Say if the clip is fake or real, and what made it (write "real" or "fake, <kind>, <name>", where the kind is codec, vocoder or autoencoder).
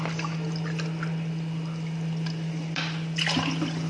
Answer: real